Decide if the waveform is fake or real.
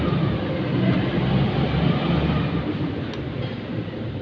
real